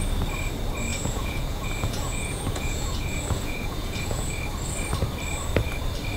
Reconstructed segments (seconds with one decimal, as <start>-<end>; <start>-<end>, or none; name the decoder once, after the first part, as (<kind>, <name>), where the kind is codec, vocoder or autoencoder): 0.9-4.3 (vocoder, Vocos)